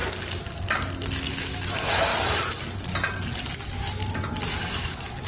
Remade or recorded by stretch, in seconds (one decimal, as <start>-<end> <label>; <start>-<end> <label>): 0.0-1.2 recorded; 1.2-2.1 remade; 2.1-4.6 recorded; 4.6-5.3 remade